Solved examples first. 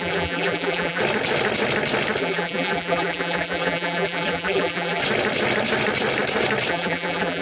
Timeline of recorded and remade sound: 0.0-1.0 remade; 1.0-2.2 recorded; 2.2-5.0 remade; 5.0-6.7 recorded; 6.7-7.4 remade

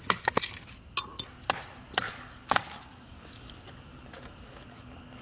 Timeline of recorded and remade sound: 0.0-1.9 recorded; 1.9-5.2 remade

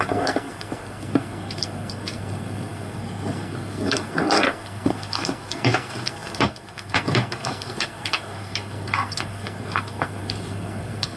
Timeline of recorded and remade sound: 0.0-11.2 remade

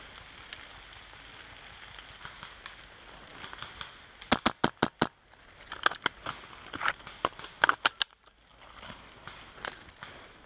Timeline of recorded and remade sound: 0.0-10.5 recorded